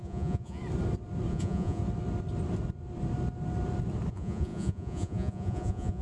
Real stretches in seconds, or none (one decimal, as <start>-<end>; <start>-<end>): 0.6-1.3; 1.8-4.1